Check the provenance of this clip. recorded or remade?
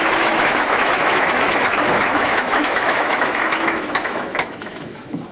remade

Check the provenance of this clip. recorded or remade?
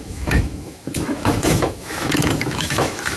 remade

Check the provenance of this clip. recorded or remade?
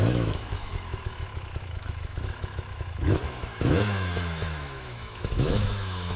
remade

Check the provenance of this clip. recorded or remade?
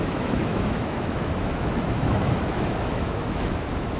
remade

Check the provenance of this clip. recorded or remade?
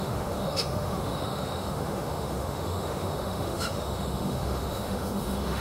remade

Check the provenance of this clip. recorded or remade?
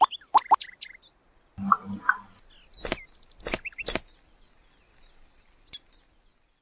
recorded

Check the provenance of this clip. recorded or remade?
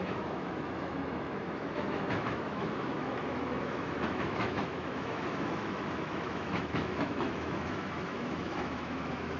remade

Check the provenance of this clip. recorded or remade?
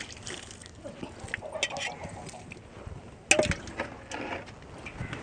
recorded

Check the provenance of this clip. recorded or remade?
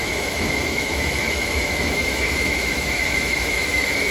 remade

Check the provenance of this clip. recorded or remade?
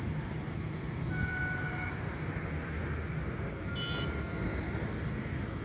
recorded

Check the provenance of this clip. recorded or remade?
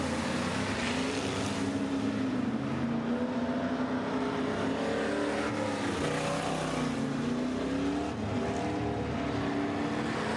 recorded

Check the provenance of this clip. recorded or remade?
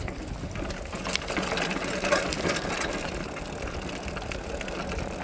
recorded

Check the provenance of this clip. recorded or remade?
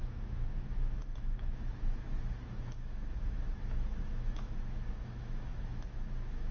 remade